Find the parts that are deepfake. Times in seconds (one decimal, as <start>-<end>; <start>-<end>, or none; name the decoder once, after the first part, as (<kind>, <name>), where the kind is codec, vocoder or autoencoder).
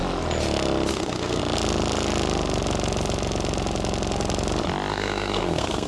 0.9-1.4 (codec, SNAC); 4.9-5.9